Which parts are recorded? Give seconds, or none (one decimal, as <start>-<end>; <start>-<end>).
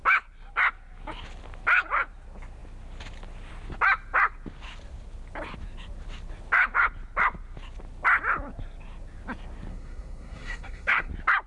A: 0.0-9.7; 11.1-11.5